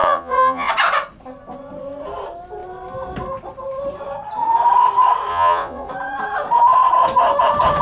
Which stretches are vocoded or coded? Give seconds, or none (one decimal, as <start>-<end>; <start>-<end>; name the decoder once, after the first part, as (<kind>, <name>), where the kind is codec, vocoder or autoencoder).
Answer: 0.0-0.7 (vocoder, Vocos); 5.3-5.9